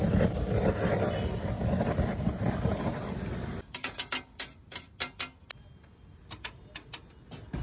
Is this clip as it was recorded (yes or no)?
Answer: yes